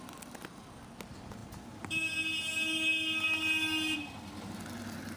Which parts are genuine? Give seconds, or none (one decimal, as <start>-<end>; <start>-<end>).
0.0-5.2